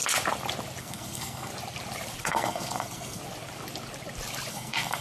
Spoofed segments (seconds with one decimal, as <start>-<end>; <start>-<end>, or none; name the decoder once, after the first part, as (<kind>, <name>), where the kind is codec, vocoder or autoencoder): 0.8-1.5 (codec, SNAC); 2.2-3.2; 4.5-5.0